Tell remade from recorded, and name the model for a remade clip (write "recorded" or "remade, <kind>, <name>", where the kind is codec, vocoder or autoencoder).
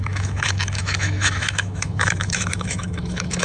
remade, autoencoder, DAC-VAE